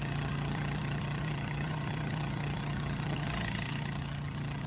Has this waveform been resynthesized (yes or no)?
yes